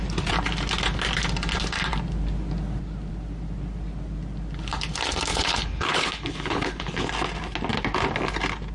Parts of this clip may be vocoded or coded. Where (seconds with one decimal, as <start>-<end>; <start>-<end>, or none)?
5.3-7.1